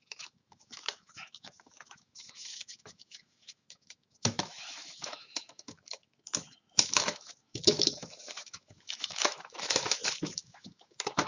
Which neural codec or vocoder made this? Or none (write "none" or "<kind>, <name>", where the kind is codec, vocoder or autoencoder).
autoencoder, DAC-VAE